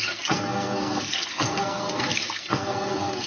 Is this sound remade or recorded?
remade